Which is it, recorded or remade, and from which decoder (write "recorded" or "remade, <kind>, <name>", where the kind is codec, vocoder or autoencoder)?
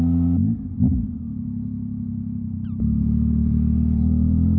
recorded